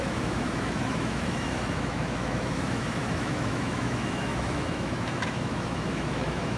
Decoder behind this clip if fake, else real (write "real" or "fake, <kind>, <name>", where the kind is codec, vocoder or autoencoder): fake, autoencoder, DAC-VAE